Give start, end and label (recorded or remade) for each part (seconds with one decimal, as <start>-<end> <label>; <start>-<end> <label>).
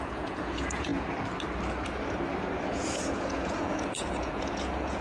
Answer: 0.0-0.9 remade; 0.9-2.7 recorded; 2.7-5.0 remade